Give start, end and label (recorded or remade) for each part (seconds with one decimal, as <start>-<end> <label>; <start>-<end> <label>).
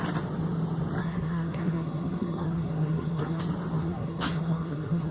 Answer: 0.0-1.0 recorded; 1.0-3.4 remade; 3.4-3.8 recorded; 3.8-5.1 remade